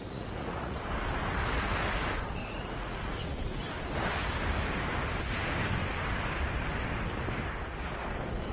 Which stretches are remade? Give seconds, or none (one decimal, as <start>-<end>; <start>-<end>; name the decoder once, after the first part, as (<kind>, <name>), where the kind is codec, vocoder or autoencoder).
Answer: 0.0-0.8 (vocoder, Vocos); 2.4-3.4